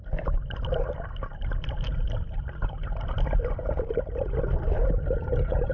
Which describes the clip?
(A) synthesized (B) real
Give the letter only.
B